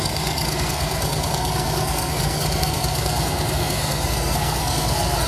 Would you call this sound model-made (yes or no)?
yes